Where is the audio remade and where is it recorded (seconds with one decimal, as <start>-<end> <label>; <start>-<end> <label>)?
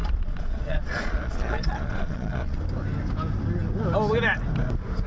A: 0.0-2.6 remade; 2.6-5.1 recorded